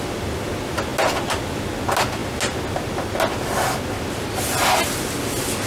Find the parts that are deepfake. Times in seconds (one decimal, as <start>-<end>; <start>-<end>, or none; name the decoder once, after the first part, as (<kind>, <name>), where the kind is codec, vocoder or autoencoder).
none